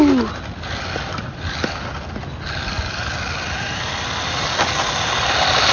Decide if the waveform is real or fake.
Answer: real